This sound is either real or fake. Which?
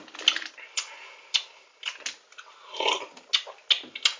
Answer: real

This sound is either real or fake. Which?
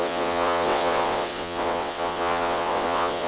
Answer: fake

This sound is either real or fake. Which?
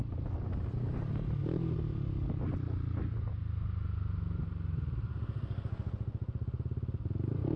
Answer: real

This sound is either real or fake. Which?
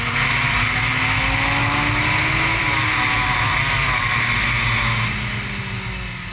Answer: real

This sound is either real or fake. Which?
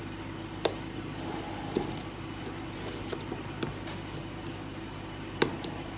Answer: real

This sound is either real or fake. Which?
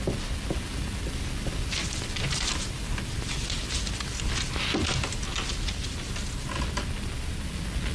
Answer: real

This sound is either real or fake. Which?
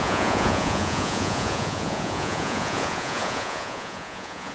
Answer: fake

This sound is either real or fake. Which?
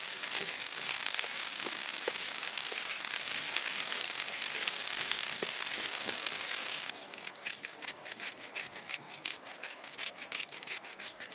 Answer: fake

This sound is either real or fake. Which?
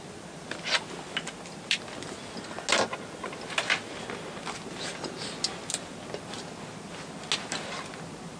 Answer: real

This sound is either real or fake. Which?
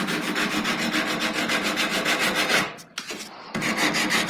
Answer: real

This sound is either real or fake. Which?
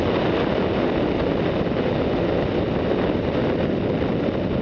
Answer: real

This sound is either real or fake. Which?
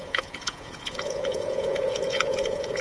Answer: fake